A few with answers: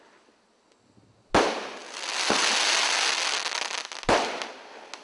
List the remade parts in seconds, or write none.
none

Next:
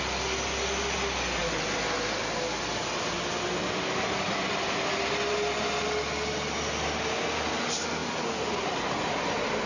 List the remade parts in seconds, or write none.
none

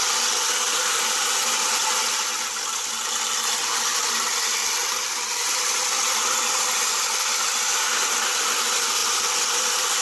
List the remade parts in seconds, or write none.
4.8-7.8 (vocoder, BigVGAN v2)

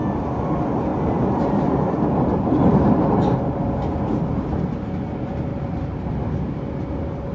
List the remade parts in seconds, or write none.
0.9-3.4 (vocoder, BigVGAN v2); 5.5-6.6

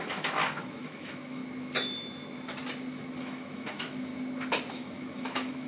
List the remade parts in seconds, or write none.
0.0-1.4 (autoencoder, DAC-VAE); 3.2-4.1; 4.7-5.7